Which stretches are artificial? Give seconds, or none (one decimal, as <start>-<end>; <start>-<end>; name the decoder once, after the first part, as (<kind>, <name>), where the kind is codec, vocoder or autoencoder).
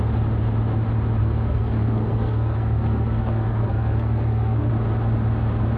1.2-4.7 (codec, SNAC)